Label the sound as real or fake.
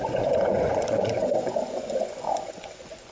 fake